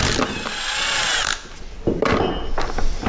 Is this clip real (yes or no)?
yes